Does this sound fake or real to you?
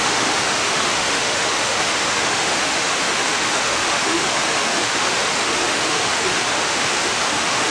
fake